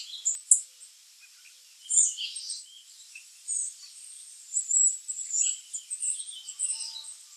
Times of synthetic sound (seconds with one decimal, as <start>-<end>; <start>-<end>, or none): 1.8-6.2